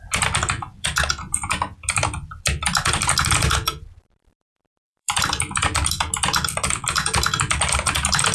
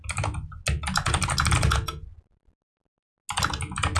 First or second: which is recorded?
second